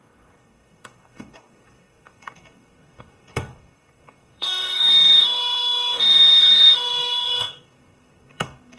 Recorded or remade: remade